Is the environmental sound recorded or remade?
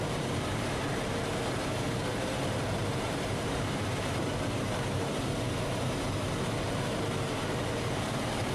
remade